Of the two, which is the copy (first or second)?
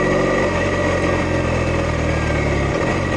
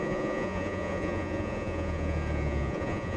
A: second